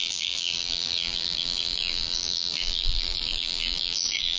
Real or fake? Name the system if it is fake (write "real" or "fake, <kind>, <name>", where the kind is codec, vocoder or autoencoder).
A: fake, vocoder, BigVGAN v2